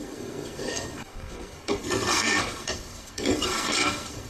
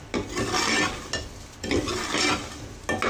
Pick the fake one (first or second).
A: first